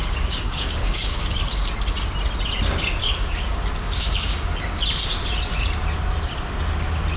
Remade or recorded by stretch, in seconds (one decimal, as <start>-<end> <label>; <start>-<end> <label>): 0.0-1.7 remade; 1.7-3.0 recorded; 3.0-4.8 remade; 4.8-7.2 recorded